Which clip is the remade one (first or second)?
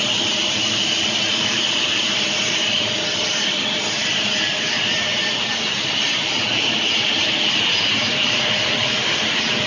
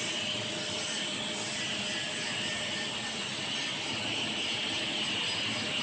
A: first